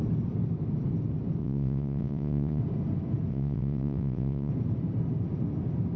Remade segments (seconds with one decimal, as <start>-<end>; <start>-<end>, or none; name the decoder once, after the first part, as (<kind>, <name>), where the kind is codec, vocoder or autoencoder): 1.4-2.6 (vocoder, WaveNeXt); 3.3-4.5